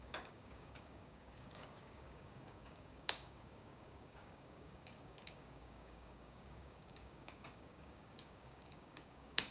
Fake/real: fake